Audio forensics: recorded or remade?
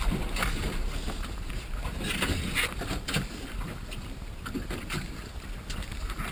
recorded